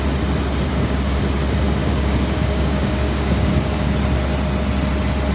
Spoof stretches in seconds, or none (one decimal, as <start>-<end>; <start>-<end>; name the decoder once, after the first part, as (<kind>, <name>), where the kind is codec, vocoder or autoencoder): 0.7-1.2 (codec, DAC); 1.8-3.9